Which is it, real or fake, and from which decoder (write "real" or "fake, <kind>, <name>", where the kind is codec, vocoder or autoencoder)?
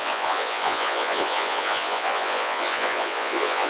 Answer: fake, vocoder, Vocos